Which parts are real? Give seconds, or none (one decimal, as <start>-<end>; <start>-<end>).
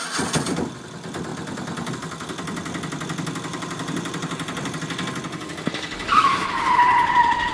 0.0-1.3; 1.9-3.5; 4.8-7.5